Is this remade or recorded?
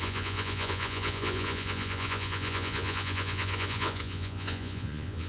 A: remade